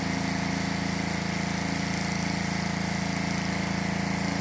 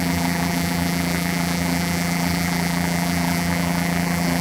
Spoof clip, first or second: second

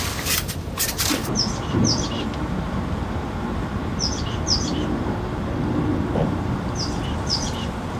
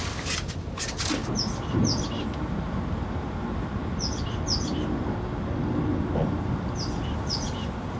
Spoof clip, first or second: first